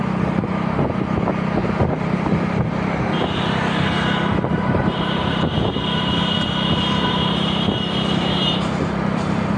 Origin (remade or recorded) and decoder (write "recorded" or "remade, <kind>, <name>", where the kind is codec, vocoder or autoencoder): remade, vocoder, BigVGAN v2